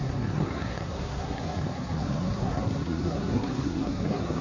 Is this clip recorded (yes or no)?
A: no